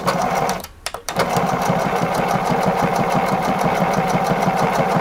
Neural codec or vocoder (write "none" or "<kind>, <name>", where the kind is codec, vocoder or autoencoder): vocoder, BigVGAN v2